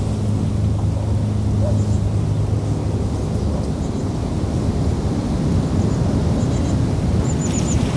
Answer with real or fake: real